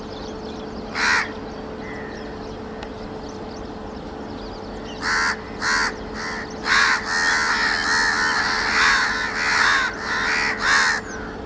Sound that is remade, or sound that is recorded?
recorded